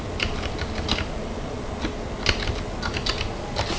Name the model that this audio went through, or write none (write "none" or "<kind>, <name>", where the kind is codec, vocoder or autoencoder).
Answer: none